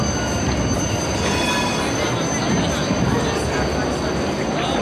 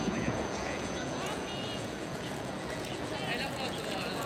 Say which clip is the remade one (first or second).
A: second